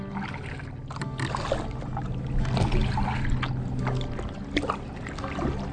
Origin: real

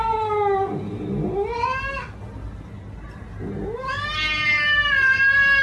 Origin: real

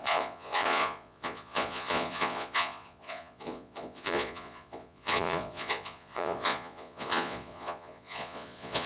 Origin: fake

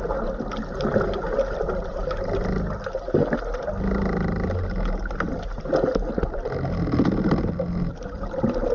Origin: real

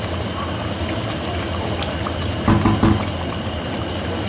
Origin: real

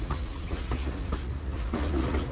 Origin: fake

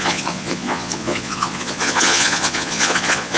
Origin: fake